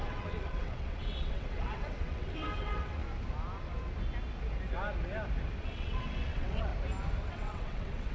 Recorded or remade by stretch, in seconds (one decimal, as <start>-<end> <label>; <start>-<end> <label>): 0.0-3.0 remade; 3.0-5.6 recorded; 5.6-6.7 remade; 6.7-7.3 recorded; 7.3-8.1 remade